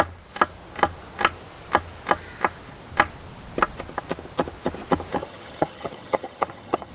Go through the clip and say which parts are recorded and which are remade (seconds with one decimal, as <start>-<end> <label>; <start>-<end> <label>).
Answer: 0.0-5.2 recorded; 5.2-6.9 remade